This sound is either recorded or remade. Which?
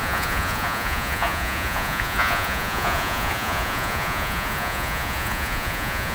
remade